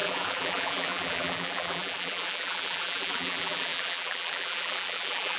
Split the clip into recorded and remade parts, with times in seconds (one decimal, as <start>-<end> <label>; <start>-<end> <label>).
0.0-5.4 remade